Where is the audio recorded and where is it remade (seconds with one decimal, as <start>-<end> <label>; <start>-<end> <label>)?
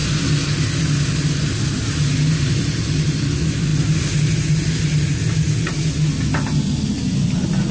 0.0-7.7 recorded